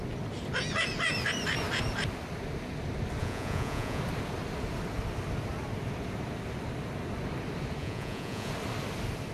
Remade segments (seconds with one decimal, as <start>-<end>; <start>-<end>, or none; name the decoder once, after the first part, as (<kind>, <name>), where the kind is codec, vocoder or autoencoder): 3.2-4.0 (vocoder, Vocos); 7.8-8.5